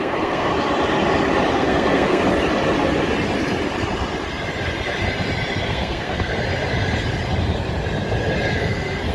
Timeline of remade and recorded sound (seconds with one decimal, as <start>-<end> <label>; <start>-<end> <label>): 0.0-0.5 remade; 0.5-1.5 recorded; 1.5-2.2 remade; 2.2-5.7 recorded; 5.7-6.3 remade; 6.3-8.5 recorded; 8.5-9.1 remade